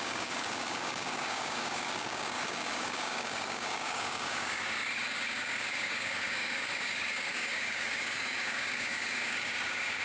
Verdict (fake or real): fake